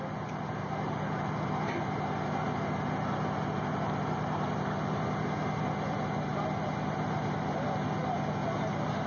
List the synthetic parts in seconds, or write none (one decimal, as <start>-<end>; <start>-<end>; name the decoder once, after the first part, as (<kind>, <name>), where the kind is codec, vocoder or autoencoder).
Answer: none